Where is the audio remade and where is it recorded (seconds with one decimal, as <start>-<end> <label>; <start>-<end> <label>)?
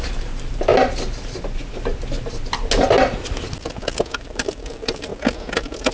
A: 0.0-0.7 remade; 0.7-4.2 recorded; 4.2-5.1 remade; 5.1-5.9 recorded